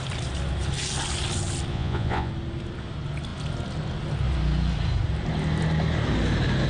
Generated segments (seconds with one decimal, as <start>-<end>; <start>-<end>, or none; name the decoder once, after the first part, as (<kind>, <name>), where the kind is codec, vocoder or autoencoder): 1.7-2.3 (vocoder, Vocos)